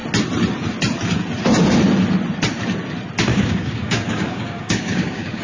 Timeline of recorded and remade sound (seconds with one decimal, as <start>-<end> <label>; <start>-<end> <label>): 0.0-3.3 recorded; 3.3-5.4 remade